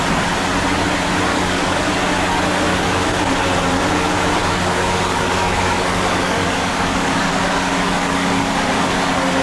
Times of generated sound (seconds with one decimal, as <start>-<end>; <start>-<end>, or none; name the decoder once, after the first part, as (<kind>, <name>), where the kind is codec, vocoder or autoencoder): 1.3-1.8 (codec, DAC); 2.7-3.3; 4.4-8.7